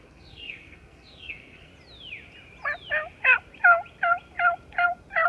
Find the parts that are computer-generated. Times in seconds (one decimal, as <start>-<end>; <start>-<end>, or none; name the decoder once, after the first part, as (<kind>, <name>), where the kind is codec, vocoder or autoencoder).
0.0-1.7 (codec, SNAC)